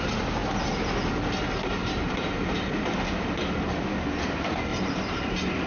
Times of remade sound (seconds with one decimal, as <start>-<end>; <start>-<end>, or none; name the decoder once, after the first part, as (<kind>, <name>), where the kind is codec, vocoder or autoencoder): 1.8-2.5 (vocoder, BigVGAN v2); 4.7-5.3